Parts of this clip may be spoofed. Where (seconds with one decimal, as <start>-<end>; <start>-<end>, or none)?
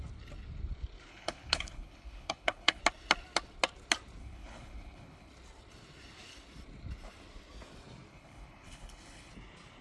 1.1-2.8; 4.2-5.3; 8.1-9.3